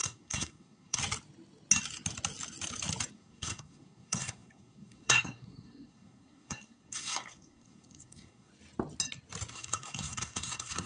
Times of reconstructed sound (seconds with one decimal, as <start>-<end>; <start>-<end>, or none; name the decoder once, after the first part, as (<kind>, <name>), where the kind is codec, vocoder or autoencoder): 0.0-1.0 (codec, SNAC); 3.1-8.5; 9.5-10.9